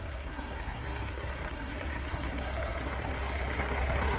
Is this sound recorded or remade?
remade